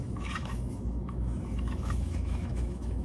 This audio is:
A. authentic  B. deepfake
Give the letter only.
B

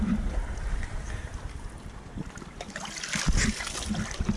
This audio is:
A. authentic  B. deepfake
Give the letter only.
A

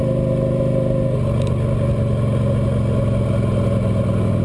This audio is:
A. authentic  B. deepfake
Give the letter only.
A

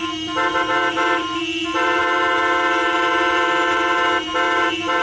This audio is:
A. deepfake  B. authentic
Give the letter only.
A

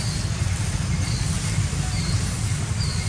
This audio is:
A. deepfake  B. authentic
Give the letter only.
B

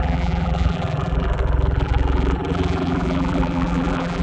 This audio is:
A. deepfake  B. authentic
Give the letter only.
A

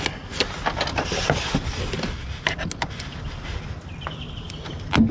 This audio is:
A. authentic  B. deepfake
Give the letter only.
A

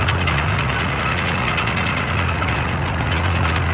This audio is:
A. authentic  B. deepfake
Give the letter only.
B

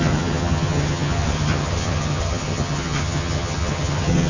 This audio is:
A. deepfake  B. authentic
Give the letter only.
A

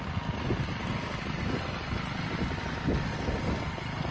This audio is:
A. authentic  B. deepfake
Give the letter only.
A